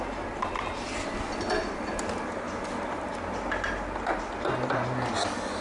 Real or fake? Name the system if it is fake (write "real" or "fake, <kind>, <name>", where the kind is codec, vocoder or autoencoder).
real